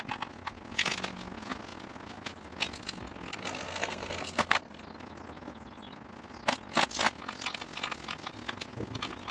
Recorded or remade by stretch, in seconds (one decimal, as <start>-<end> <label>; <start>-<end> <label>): 0.0-3.4 recorded; 3.4-4.8 remade; 4.8-9.3 recorded